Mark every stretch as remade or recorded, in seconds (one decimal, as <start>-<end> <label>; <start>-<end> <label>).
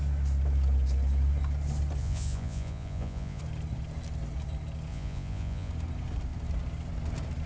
0.0-2.0 recorded; 2.0-3.4 remade; 3.4-4.9 recorded; 4.9-5.7 remade; 5.7-7.5 recorded